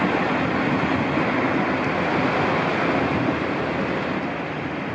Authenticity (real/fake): real